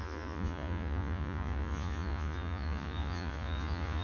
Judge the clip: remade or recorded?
remade